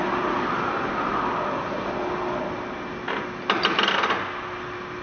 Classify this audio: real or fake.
real